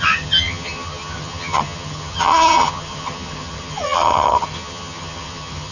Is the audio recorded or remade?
remade